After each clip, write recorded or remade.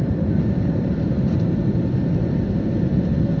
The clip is recorded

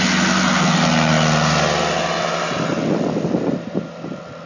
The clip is recorded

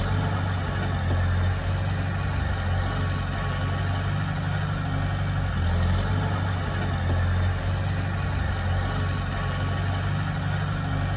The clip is recorded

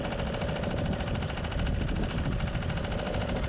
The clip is recorded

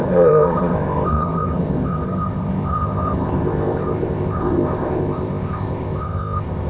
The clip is remade